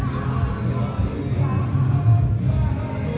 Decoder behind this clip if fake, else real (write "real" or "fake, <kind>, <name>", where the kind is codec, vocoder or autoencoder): real